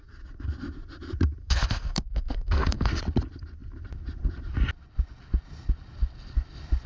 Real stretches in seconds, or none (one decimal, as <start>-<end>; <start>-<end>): 0.0-1.4; 3.0-6.9